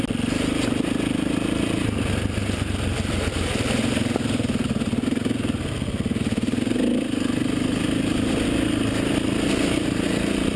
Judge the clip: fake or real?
real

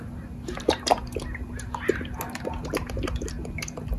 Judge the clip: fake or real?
real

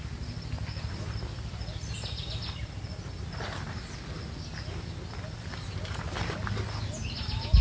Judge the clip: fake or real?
real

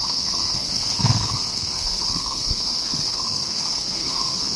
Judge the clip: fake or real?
fake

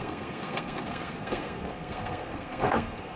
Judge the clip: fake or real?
fake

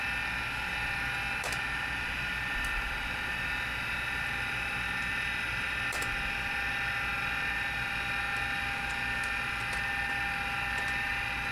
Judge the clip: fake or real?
real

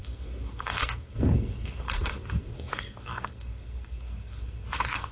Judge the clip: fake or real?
fake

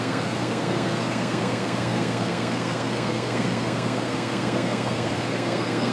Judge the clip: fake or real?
fake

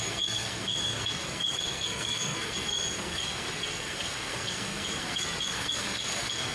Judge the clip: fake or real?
fake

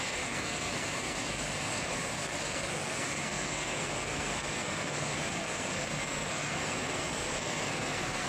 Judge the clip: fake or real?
fake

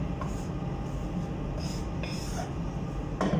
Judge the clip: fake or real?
real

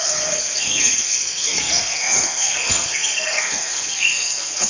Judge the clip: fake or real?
fake